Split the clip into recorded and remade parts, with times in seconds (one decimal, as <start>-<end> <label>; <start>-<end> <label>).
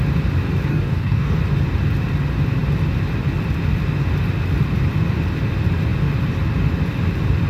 0.0-0.7 recorded; 0.7-1.4 remade; 1.4-7.5 recorded